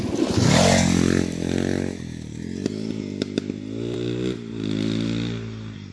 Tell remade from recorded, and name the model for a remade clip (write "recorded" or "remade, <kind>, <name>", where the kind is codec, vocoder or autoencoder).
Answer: recorded